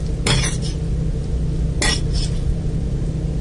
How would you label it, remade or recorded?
recorded